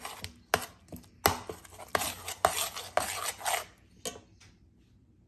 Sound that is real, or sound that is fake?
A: real